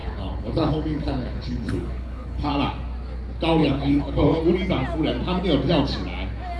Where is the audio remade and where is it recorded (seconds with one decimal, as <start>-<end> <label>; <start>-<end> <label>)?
0.0-2.5 remade; 2.5-3.6 recorded; 3.6-4.4 remade; 4.4-6.6 recorded